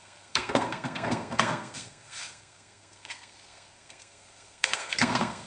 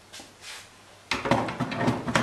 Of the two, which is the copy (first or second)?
first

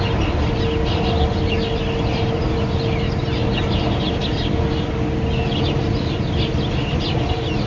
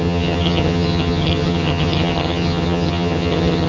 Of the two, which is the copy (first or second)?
second